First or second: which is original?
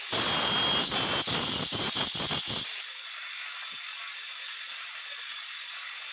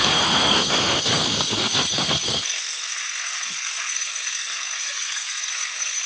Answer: first